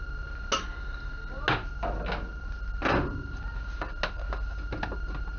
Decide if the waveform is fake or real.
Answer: real